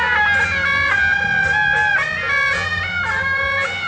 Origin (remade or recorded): recorded